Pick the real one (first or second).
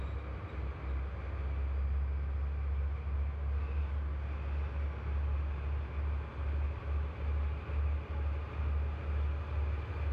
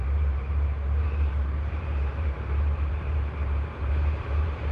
first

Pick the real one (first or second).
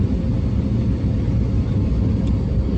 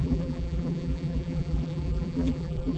first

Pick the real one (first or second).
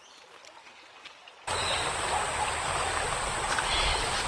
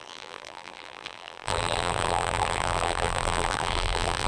first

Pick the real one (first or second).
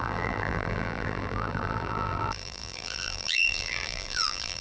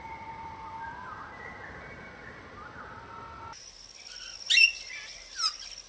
second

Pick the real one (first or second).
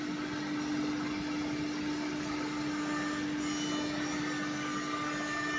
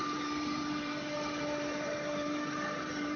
first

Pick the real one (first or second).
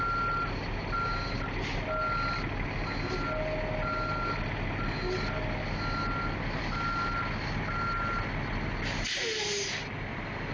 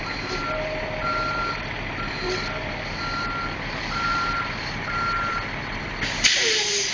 first